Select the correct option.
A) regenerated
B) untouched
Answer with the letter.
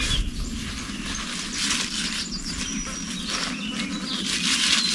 B